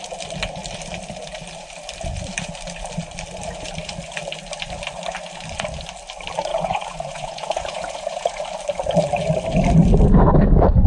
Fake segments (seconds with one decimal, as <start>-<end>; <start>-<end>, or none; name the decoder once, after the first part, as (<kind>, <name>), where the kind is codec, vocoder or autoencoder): 6.5-8.4 (vocoder, Vocos)